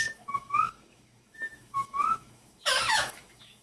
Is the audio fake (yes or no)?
yes